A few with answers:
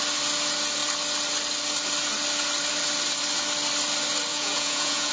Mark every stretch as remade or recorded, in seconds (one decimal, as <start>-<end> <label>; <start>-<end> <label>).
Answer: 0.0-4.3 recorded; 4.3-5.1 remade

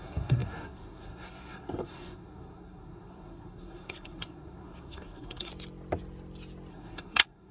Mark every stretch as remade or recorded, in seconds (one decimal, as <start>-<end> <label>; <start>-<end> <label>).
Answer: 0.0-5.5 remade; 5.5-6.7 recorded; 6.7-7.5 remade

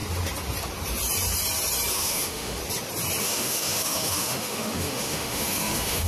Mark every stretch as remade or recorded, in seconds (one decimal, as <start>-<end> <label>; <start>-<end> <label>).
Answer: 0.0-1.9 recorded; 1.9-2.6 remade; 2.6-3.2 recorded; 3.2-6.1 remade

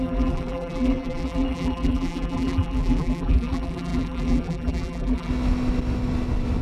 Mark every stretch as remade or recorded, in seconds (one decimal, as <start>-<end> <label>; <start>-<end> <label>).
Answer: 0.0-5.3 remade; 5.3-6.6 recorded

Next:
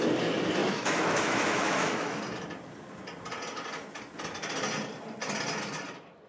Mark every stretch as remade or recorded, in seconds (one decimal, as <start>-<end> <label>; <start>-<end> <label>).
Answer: 0.0-0.6 recorded; 0.6-2.2 remade; 2.2-6.3 recorded